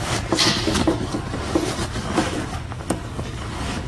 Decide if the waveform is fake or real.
fake